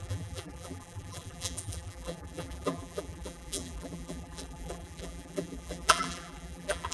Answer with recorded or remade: remade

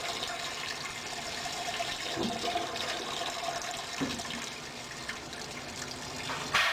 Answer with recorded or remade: remade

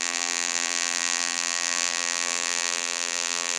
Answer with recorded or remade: remade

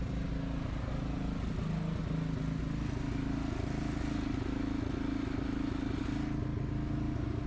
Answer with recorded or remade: recorded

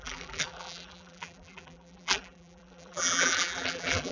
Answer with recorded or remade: remade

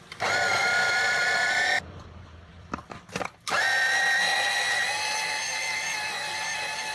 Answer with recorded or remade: remade